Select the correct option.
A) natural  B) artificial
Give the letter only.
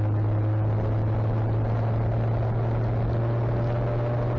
A